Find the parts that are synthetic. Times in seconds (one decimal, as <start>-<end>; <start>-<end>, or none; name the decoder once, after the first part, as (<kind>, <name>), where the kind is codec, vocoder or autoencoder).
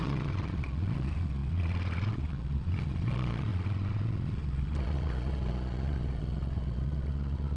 0.0-7.6 (vocoder, Vocos)